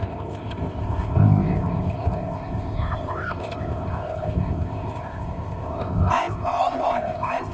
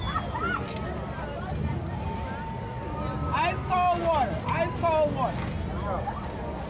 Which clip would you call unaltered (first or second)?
second